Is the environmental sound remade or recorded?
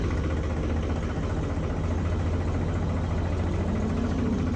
recorded